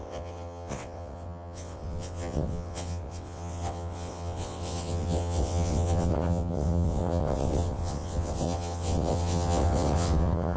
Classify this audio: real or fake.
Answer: fake